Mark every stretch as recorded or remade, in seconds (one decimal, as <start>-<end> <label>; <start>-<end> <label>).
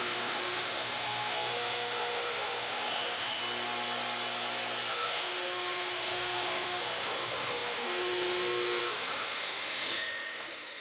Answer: 0.0-3.4 remade; 3.4-4.9 recorded; 4.9-10.8 remade